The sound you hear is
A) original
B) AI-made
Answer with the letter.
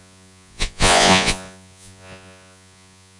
B